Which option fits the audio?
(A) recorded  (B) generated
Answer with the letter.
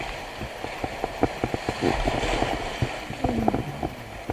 A